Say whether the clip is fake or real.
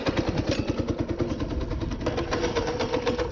real